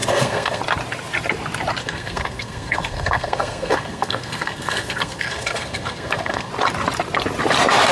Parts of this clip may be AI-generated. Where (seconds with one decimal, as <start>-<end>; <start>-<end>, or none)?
0.0-0.6; 1.8-6.5